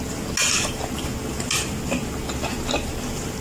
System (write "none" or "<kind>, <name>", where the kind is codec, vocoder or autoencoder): none